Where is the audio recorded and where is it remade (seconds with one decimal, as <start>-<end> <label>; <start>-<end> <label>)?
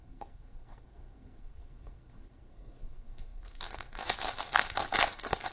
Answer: 0.0-5.5 remade